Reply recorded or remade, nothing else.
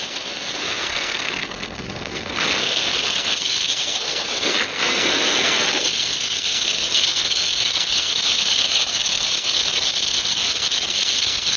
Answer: remade